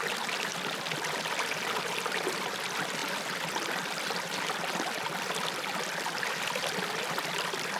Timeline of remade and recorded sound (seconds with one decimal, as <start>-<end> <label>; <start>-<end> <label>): 0.0-3.0 recorded; 3.0-7.8 remade